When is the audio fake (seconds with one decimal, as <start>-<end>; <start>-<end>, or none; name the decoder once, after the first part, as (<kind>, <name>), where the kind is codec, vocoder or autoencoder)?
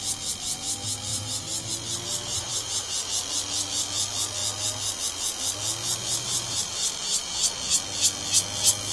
1.1-1.7 (vocoder, BigVGAN v2); 2.3-3.1; 6.0-7.5